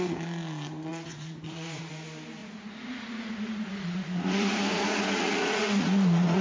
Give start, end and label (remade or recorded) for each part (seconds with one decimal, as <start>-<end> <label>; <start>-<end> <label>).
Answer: 0.0-0.9 recorded; 0.9-1.9 remade; 1.9-2.4 recorded; 2.4-6.4 remade